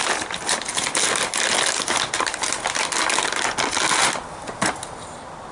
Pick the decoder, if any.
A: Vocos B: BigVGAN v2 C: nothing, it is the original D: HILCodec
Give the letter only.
C